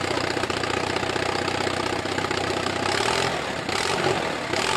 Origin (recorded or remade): recorded